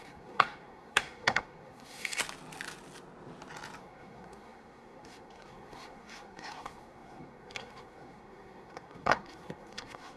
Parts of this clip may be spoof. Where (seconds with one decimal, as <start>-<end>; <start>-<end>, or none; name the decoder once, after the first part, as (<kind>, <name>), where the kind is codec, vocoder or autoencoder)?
0.0-2.2 (codec, SNAC); 3.8-10.2